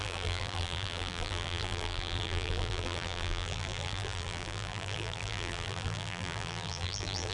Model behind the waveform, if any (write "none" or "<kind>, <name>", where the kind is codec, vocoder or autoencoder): vocoder, BigVGAN v2